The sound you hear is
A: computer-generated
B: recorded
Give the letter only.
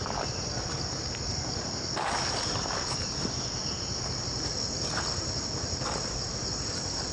B